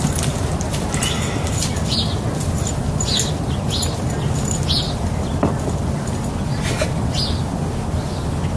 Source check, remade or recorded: recorded